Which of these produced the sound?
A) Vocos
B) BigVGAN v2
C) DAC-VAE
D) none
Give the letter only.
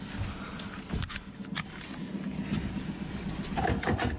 D